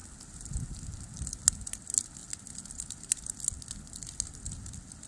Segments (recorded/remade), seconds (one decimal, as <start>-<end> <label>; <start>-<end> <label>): 0.0-5.1 recorded